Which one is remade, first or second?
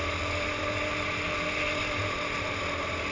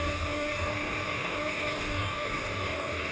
second